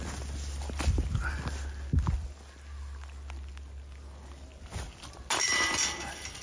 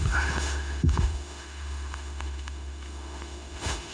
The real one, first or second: first